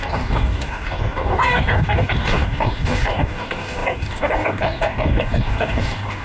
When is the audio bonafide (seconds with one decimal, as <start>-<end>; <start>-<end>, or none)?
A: none